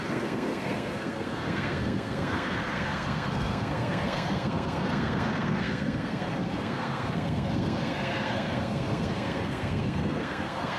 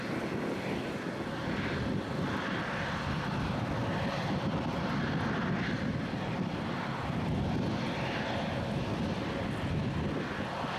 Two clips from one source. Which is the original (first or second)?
second